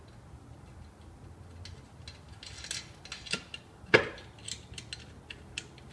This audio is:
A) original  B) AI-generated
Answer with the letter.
A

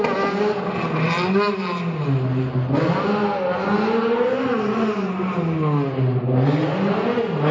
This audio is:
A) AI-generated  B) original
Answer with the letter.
B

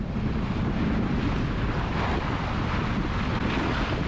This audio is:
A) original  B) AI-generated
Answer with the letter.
A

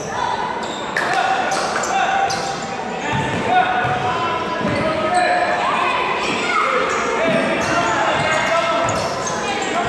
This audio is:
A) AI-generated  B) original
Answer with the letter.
B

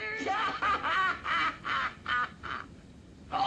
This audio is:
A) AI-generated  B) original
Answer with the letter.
B